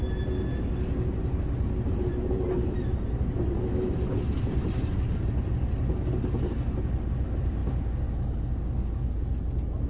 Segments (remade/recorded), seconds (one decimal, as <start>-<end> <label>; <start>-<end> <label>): 0.0-9.9 recorded